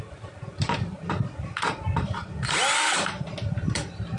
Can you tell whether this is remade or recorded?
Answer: remade